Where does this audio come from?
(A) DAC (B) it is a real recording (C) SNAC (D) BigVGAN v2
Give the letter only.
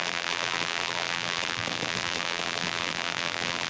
D